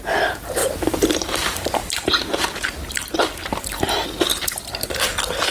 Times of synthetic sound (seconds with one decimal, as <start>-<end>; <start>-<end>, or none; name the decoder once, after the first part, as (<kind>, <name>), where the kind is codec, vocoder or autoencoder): 0.6-3.9 (vocoder, BigVGAN v2); 4.3-5.1